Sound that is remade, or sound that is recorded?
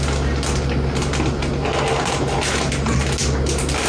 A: recorded